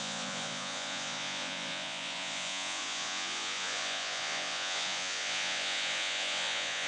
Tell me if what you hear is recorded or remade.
remade